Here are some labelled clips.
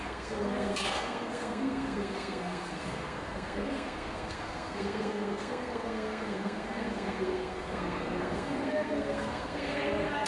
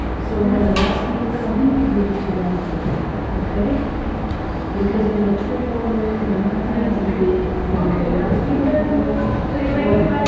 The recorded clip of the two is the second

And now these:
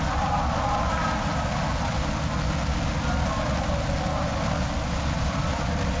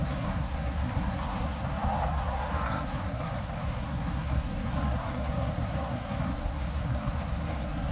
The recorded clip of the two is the first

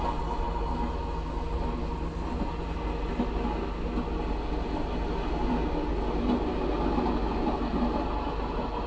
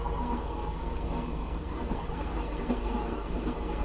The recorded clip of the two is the first